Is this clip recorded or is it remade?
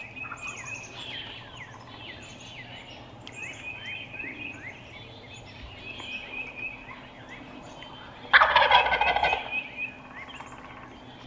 recorded